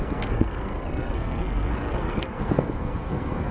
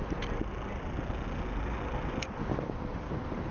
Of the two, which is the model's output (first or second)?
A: first